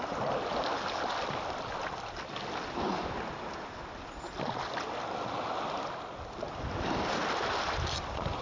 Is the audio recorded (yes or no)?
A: yes